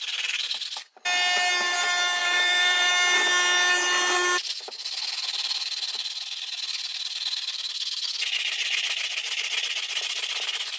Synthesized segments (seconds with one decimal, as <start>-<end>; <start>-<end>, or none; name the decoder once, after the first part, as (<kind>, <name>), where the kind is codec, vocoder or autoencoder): 2.2-2.9 (vocoder, BigVGAN v2)